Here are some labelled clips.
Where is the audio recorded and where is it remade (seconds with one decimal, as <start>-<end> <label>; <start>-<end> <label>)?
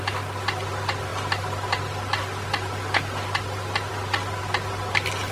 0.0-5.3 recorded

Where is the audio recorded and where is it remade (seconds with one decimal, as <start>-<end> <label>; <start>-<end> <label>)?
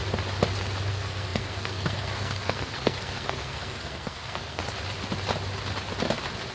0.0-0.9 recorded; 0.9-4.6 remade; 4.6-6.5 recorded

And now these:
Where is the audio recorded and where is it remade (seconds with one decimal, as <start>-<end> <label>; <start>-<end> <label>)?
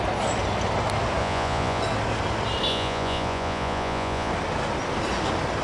0.0-1.2 recorded; 1.2-1.8 remade; 1.8-2.7 recorded; 2.7-4.3 remade; 4.3-5.6 recorded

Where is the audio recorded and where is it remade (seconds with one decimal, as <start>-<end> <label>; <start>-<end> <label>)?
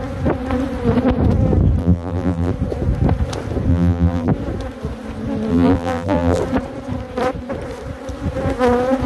0.0-1.8 recorded; 1.8-2.5 remade; 2.5-3.7 recorded; 3.7-4.3 remade; 4.3-5.5 recorded; 5.5-6.4 remade; 6.4-9.1 recorded